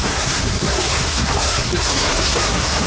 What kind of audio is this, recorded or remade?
remade